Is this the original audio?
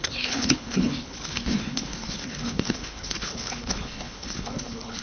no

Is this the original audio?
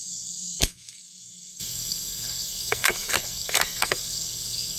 no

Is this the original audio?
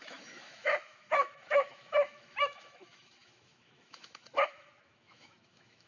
no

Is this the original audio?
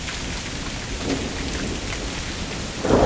yes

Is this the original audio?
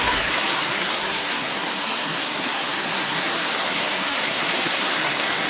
no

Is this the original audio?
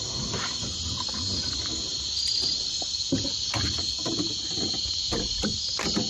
yes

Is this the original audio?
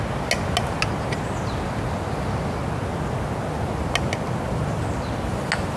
yes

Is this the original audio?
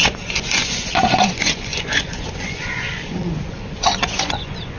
no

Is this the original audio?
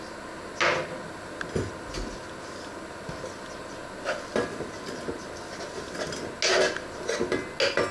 yes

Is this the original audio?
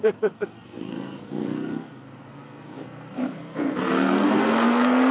no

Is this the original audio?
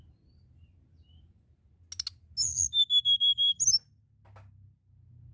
yes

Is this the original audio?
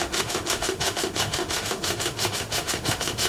no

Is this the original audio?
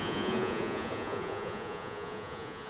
no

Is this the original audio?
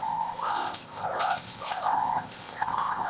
no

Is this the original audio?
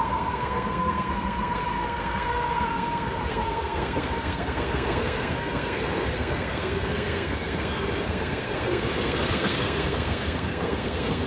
no